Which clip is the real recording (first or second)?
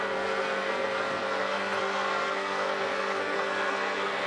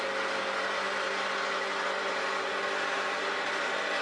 second